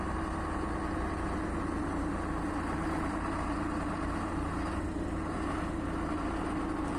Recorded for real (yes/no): yes